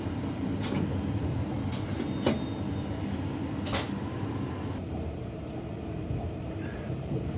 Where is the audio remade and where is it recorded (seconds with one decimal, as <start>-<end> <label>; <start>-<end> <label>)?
0.0-0.5 remade; 0.5-4.8 recorded; 4.8-7.4 remade